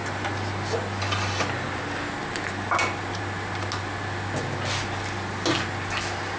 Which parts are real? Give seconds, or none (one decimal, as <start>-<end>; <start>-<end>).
0.0-6.4

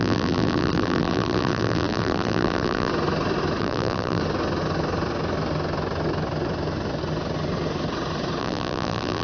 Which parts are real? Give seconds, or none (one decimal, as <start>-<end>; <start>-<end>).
2.9-3.6; 4.2-8.4

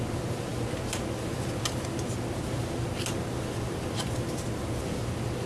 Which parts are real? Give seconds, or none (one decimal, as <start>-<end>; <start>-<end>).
0.0-5.5

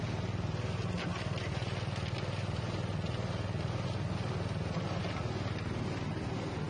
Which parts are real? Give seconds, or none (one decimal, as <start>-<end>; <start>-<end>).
0.0-6.7

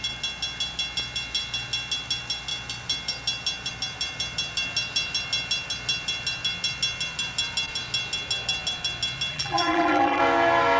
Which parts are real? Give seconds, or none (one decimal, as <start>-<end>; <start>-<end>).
0.0-9.3; 10.2-10.8

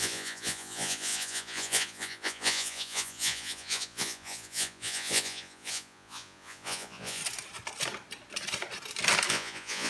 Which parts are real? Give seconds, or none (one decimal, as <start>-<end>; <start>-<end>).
7.2-9.3

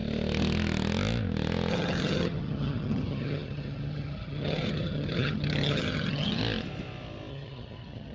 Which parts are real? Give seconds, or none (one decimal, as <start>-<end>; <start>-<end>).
0.0-1.7; 6.4-7.3